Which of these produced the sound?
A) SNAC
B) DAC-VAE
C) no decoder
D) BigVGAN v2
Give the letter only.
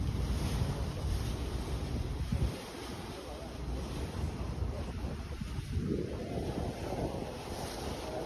D